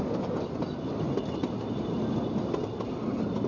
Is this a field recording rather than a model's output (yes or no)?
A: yes